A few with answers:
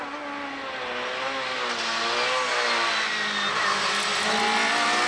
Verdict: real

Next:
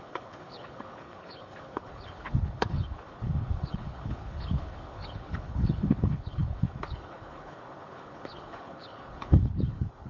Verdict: fake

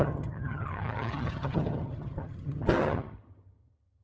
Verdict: fake